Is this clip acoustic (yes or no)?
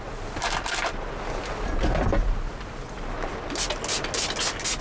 yes